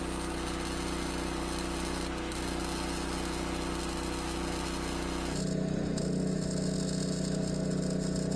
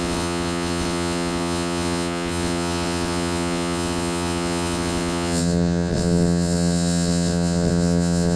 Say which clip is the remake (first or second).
second